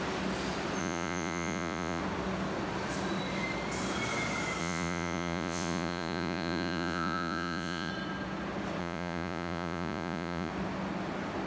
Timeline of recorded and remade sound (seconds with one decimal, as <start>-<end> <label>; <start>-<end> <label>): 0.0-0.8 recorded; 0.8-2.0 remade; 2.0-4.6 recorded; 4.6-7.9 remade; 7.9-8.8 recorded; 8.8-10.5 remade; 10.5-11.5 recorded